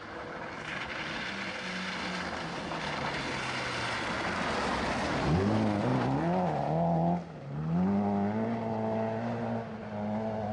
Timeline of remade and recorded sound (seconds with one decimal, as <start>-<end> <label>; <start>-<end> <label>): 0.0-10.5 recorded